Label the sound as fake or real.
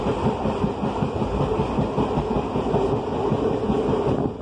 real